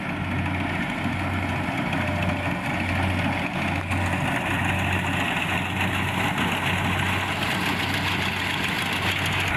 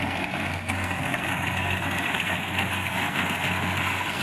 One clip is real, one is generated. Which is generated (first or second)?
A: second